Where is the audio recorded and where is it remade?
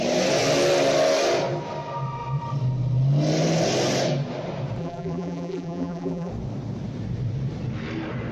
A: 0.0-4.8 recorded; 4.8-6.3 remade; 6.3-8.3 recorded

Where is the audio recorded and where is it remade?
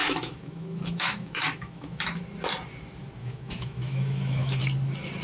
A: 0.0-2.2 remade; 2.2-3.2 recorded; 3.2-4.6 remade; 4.6-5.2 recorded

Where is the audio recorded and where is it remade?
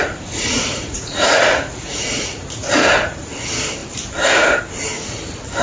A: 0.0-3.4 remade; 3.4-5.6 recorded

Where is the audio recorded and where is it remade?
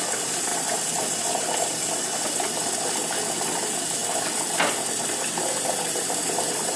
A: 0.0-0.5 remade; 0.5-1.0 recorded; 1.0-4.0 remade; 4.0-4.9 recorded; 4.9-6.8 remade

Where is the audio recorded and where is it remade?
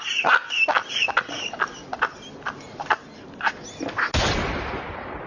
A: 0.0-5.3 recorded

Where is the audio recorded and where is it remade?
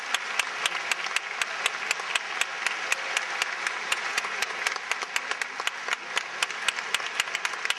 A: 0.0-3.9 recorded; 3.9-4.6 remade; 4.6-7.8 recorded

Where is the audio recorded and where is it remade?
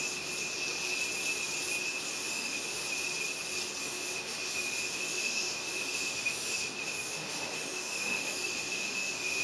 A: 0.0-2.1 recorded; 2.1-2.8 remade; 2.8-3.8 recorded; 3.8-9.4 remade